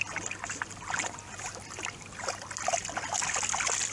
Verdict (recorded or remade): recorded